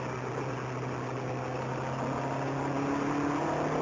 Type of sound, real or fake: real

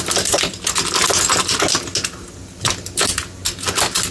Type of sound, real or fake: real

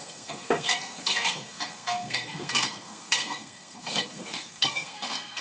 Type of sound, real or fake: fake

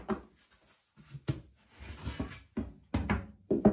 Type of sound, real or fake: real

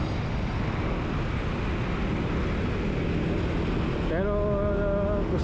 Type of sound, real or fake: real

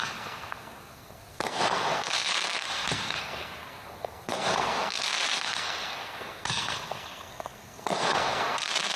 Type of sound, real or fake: fake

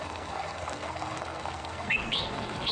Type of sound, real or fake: fake